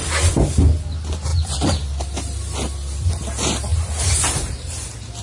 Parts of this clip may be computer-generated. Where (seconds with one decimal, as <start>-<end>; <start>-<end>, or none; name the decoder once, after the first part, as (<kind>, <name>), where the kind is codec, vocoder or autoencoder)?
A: 3.7-4.8 (vocoder, BigVGAN v2)